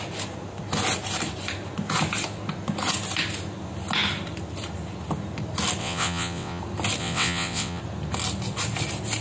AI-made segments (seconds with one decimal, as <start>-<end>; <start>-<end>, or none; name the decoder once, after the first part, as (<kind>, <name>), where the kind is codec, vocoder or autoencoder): 5.8-6.6 (vocoder, WaveNeXt); 7.0-7.8